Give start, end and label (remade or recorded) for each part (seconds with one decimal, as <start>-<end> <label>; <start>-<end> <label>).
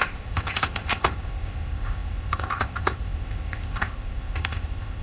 0.0-5.0 remade